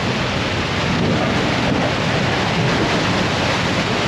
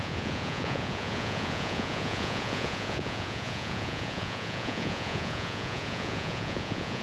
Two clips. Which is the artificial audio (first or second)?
second